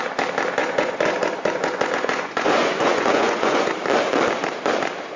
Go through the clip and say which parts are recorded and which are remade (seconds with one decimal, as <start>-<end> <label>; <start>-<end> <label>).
0.0-0.6 recorded; 0.6-3.7 remade; 3.7-5.2 recorded